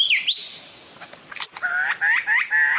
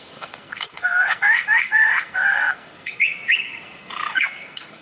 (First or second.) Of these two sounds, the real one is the first